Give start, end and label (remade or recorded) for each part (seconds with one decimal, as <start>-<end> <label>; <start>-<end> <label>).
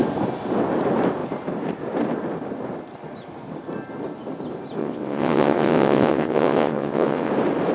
0.0-4.8 recorded; 4.8-7.3 remade; 7.3-7.7 recorded